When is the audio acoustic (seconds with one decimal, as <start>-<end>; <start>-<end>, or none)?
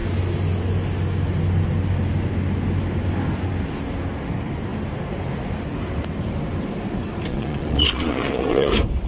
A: 0.0-7.3; 8.7-9.1